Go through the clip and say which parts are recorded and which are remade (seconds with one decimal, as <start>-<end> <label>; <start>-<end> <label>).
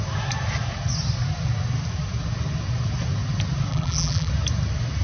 0.0-3.7 recorded; 3.7-4.3 remade; 4.3-5.0 recorded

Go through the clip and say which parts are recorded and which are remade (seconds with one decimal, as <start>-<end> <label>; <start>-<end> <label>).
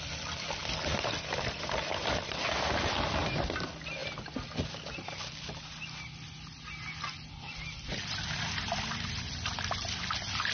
0.0-4.0 remade; 4.0-8.1 recorded; 8.1-10.5 remade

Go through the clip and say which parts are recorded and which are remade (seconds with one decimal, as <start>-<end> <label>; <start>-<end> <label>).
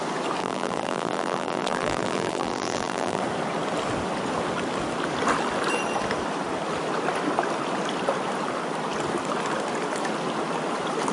0.0-0.4 recorded; 0.4-3.2 remade; 3.2-11.1 recorded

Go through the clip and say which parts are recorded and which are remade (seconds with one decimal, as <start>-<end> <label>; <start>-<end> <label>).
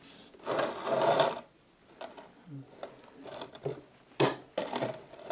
0.0-5.3 recorded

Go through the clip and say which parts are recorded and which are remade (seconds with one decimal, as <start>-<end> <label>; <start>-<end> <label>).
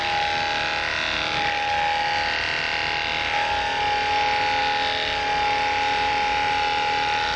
0.0-7.4 recorded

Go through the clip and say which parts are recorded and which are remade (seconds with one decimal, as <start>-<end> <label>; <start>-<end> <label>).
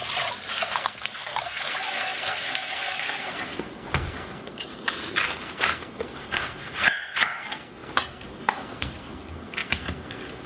0.0-0.5 recorded; 0.5-10.5 remade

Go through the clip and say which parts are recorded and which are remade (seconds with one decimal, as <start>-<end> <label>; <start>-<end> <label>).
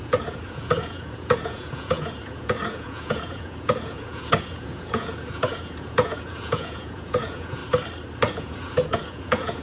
0.0-7.6 remade; 7.6-8.2 recorded; 8.2-9.6 remade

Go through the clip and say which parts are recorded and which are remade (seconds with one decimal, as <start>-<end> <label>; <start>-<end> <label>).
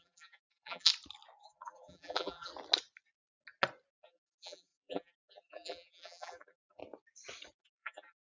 0.0-0.9 remade; 0.9-1.4 recorded; 1.4-2.5 remade; 2.5-3.9 recorded; 3.9-6.8 remade; 6.8-7.6 recorded; 7.6-8.3 remade